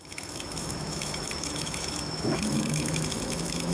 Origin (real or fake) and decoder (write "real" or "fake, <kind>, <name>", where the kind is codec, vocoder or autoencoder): fake, autoencoder, DAC-VAE